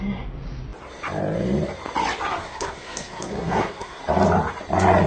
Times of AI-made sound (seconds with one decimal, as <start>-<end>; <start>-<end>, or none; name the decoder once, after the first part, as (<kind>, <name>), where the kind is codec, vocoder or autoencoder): 2.4-4.0 (codec, SNAC)

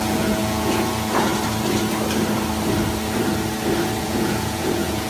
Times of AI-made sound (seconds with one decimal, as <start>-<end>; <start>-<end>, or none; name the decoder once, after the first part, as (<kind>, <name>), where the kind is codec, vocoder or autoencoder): 0.0-1.3 (vocoder, Vocos); 4.0-5.1

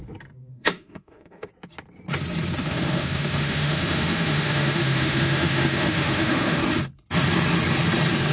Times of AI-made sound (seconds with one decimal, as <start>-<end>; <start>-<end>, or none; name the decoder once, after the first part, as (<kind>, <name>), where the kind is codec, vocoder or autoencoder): 0.5-1.5 (autoencoder, DAC-VAE); 2.6-6.6